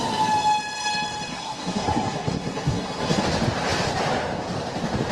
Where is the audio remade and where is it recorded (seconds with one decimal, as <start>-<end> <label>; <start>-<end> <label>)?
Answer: 0.0-1.3 recorded; 1.3-3.2 remade; 3.2-5.1 recorded